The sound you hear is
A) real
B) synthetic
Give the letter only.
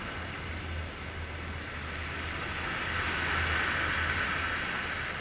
A